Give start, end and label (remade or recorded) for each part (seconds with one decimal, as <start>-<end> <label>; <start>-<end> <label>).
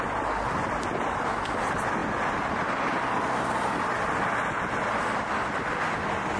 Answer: 0.0-6.4 recorded